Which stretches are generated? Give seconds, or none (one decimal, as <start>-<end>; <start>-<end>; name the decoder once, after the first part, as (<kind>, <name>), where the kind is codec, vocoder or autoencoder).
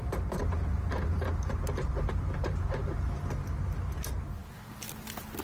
none